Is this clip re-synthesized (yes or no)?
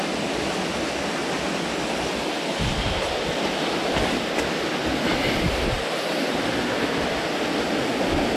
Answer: no